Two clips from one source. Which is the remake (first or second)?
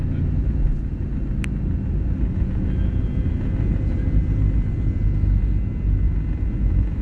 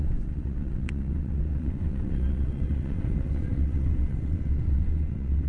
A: second